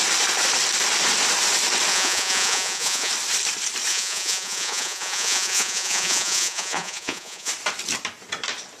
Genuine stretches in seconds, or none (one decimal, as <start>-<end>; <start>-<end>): 0.0-1.9; 3.1-3.9; 7.5-8.8